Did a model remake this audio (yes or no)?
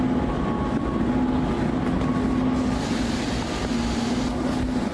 no